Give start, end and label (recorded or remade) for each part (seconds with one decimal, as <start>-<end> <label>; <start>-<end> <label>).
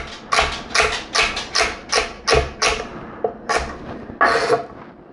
0.0-5.1 recorded